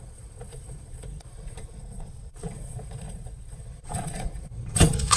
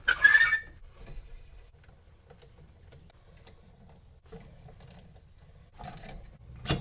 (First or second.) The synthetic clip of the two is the first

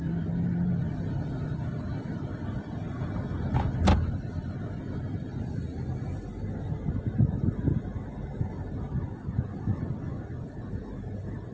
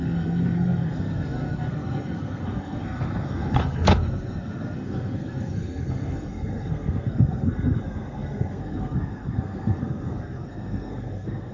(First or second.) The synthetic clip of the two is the second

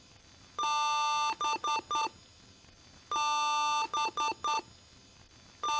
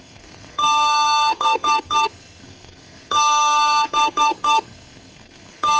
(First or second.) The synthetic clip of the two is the second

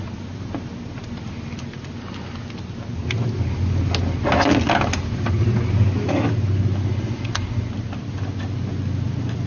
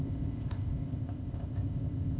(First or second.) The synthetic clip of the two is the second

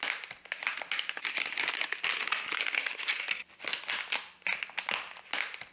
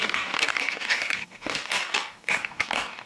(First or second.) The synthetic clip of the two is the second